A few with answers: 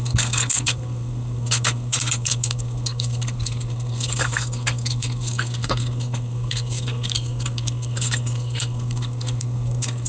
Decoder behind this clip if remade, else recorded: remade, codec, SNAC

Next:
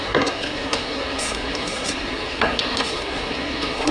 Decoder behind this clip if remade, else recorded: remade, codec, SNAC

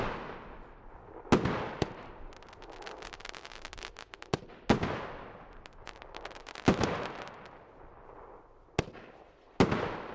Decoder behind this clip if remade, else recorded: recorded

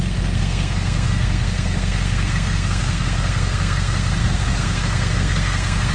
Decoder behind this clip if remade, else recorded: remade, codec, SNAC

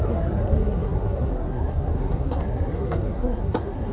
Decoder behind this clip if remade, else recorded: remade, codec, SNAC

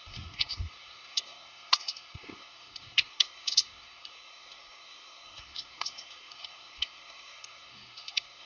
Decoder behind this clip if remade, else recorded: remade, codec, SNAC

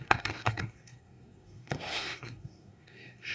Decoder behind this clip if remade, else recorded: remade, codec, SNAC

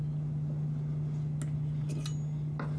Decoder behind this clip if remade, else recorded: recorded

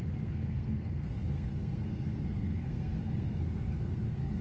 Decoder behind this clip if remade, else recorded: remade, codec, SNAC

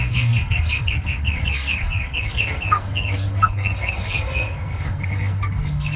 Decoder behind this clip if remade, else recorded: remade, codec, SNAC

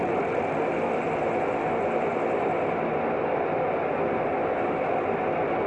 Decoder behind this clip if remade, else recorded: recorded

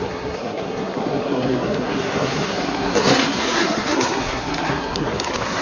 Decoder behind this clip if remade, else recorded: remade, codec, SNAC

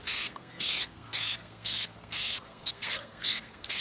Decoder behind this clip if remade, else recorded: remade, codec, SNAC